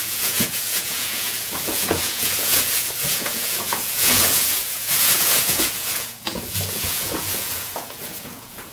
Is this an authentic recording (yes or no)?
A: no